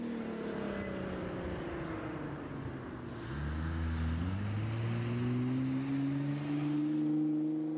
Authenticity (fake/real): real